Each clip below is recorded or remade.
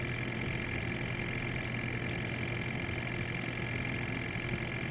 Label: recorded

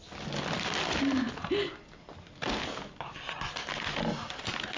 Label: recorded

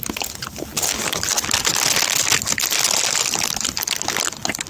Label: recorded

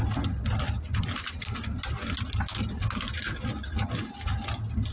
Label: recorded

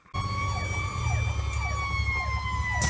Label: recorded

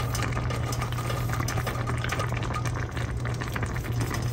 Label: recorded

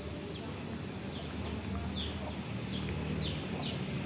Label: recorded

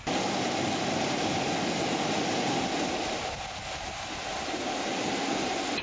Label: recorded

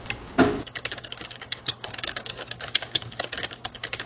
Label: remade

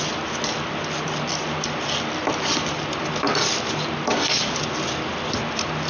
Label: recorded